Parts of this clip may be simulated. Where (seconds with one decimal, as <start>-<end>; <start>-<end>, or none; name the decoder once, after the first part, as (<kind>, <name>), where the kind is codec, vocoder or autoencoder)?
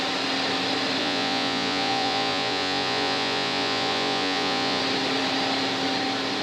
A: 1.0-4.8 (vocoder, Vocos)